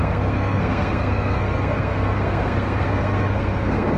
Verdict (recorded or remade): remade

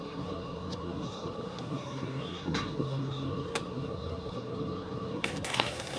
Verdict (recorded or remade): remade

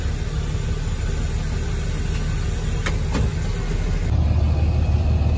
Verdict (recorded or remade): recorded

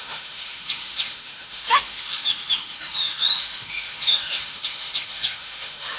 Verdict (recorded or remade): remade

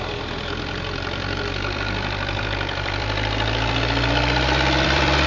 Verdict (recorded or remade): remade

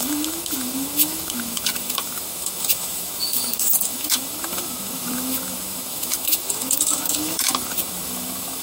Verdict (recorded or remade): remade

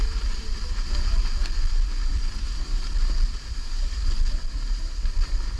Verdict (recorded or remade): recorded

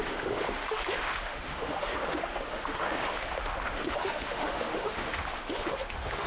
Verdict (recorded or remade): remade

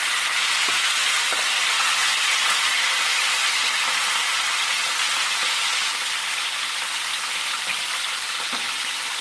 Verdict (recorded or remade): recorded